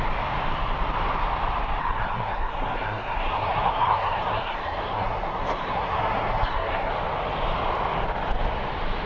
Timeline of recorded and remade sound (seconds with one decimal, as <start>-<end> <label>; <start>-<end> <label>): 0.0-1.8 recorded; 1.8-6.9 remade; 6.9-9.1 recorded